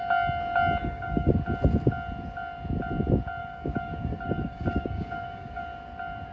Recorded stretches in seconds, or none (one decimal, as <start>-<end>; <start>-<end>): 0.0-0.8; 1.3-3.4; 5.6-6.3